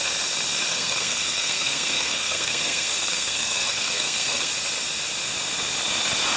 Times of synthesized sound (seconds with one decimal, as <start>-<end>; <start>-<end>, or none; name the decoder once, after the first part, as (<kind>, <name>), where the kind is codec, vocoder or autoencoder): 0.7-4.5 (codec, SNAC)